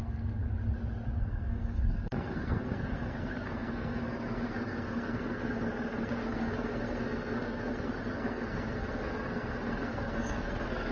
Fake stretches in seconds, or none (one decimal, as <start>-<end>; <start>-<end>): 0.0-0.4; 1.2-10.9